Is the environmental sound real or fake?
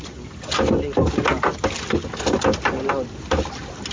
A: real